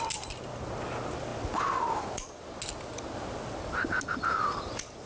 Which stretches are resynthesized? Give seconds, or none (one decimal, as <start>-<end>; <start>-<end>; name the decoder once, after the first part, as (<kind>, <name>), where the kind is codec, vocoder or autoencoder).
none